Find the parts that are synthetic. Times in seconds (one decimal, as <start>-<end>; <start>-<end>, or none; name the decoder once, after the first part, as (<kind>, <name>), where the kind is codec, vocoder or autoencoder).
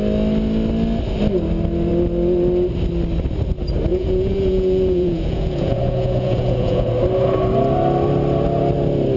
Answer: 3.9-6.9 (vocoder, Vocos)